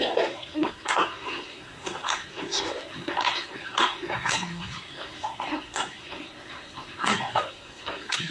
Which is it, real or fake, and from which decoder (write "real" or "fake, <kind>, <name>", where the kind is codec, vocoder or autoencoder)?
fake, codec, SNAC